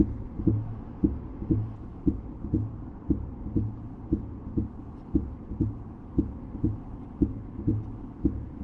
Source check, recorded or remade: recorded